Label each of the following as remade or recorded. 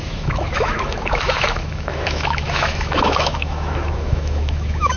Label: remade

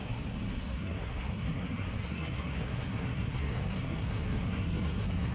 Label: remade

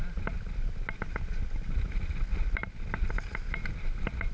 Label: recorded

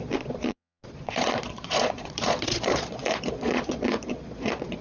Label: remade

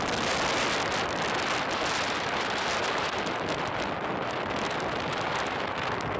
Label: recorded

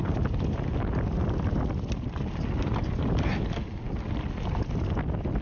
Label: recorded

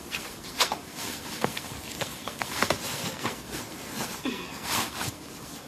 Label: remade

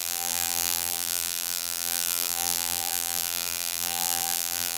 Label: remade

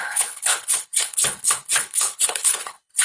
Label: remade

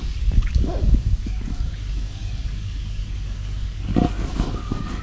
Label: remade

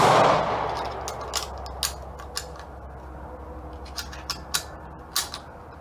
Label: recorded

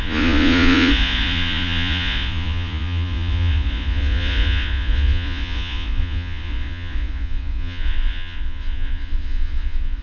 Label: remade